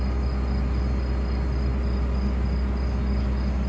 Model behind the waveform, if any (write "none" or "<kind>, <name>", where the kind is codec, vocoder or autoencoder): none